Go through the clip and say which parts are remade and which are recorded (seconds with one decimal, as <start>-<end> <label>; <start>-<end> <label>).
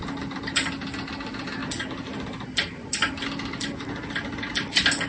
0.0-5.1 recorded